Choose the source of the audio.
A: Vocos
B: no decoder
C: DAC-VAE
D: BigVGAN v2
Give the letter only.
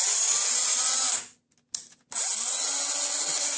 B